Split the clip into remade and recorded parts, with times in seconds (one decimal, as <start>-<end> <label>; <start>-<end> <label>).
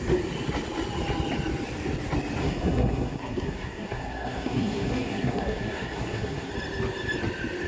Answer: 0.0-2.4 recorded; 2.4-6.5 remade; 6.5-7.7 recorded